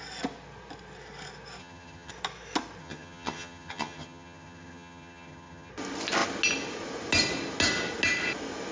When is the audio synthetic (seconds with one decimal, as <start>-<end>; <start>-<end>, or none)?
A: 1.6-2.1; 2.8-5.7